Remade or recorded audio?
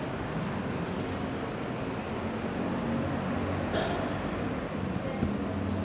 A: recorded